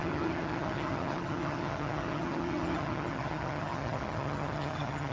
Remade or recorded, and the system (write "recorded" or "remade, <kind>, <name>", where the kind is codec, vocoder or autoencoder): remade, vocoder, HiFi-GAN